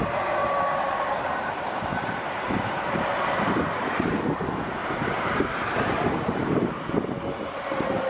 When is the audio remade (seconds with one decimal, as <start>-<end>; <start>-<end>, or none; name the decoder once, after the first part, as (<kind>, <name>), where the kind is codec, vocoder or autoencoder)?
1.9-4.2 (vocoder, BigVGAN v2); 4.8-5.5